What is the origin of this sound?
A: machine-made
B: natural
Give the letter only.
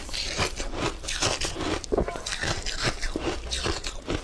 B